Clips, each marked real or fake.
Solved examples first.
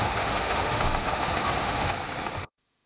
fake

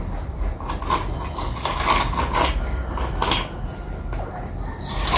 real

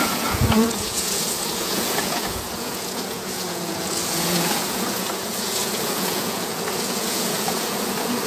fake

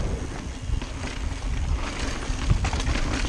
real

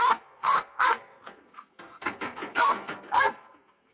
fake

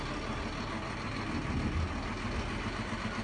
real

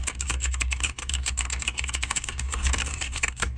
fake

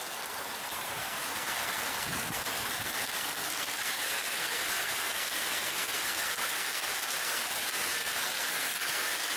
fake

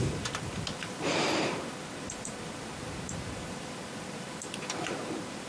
fake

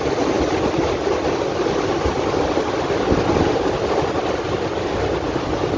real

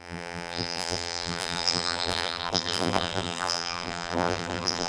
fake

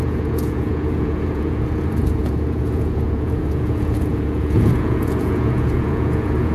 fake